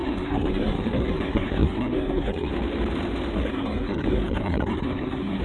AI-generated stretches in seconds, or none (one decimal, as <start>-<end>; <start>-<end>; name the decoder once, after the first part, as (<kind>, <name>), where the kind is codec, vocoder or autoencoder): 0.0-2.5 (codec, SNAC); 3.4-5.4